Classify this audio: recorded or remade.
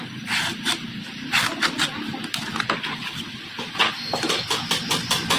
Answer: recorded